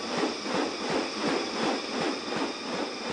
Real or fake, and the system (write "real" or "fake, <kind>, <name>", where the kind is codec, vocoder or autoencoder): real